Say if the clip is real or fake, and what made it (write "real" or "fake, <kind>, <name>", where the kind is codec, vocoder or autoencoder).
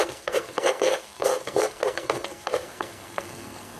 fake, codec, SNAC